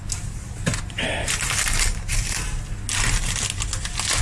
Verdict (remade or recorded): recorded